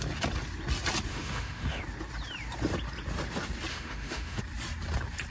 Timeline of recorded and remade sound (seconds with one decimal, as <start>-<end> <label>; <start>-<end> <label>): 0.0-1.1 recorded; 1.1-1.8 remade; 1.8-3.7 recorded; 3.7-4.4 remade; 4.4-5.3 recorded